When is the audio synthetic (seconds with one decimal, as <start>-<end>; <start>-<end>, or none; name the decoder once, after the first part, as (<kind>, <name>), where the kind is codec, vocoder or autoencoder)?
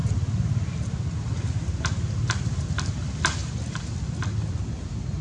none